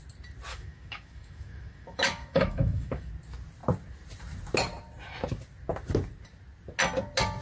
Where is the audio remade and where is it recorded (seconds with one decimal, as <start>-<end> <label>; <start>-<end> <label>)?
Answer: 0.0-0.5 recorded; 0.5-3.1 remade; 3.1-7.4 recorded